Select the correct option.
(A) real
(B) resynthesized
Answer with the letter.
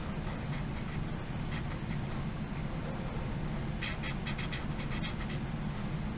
A